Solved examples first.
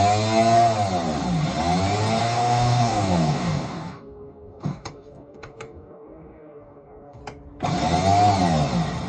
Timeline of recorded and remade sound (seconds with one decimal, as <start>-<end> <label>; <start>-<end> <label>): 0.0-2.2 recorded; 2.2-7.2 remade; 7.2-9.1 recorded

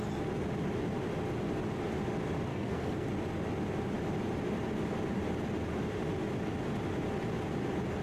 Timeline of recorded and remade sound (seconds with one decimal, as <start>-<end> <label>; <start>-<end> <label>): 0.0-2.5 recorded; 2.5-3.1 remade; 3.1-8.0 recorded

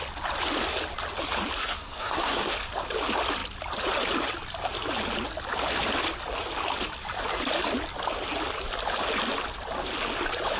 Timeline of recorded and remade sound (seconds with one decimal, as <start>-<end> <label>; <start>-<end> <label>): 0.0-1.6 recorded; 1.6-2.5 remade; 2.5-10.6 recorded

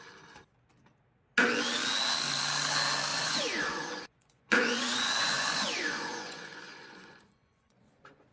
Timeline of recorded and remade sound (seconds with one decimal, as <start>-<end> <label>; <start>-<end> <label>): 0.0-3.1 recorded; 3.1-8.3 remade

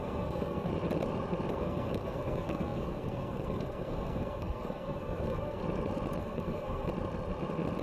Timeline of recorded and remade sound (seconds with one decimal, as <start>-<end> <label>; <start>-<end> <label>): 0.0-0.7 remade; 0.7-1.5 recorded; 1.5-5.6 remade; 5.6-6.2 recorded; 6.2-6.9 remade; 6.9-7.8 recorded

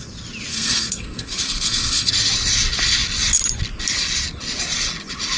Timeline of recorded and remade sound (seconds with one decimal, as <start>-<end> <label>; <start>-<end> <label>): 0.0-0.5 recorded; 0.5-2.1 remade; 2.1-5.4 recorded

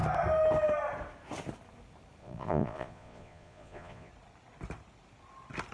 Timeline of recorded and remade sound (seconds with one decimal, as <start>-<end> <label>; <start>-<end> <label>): 0.0-2.2 recorded; 2.2-4.1 remade; 4.1-5.7 recorded

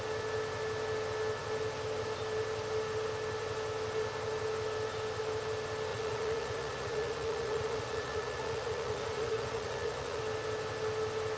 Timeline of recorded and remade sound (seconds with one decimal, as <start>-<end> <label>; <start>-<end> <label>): 0.0-5.9 recorded; 5.9-10.2 remade; 10.2-11.4 recorded